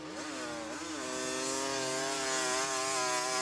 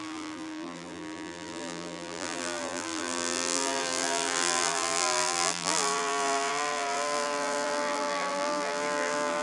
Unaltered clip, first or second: first